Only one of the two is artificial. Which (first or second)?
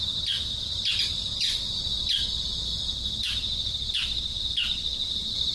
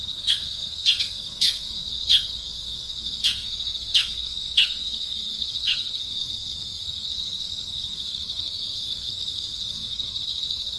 second